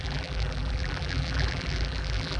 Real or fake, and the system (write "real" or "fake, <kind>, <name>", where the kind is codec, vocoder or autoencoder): fake, vocoder, BigVGAN v2